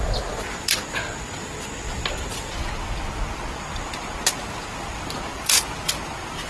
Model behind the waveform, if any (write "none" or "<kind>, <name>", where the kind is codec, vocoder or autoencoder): none